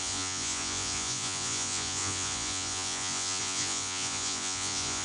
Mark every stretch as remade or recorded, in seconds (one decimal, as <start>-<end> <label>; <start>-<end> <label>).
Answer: 0.0-5.0 remade